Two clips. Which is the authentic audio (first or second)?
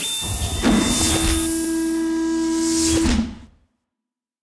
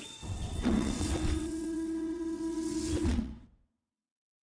first